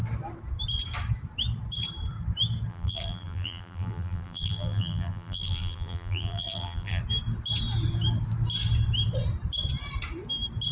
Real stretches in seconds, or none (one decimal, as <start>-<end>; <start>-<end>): 0.0-2.7; 7.0-10.7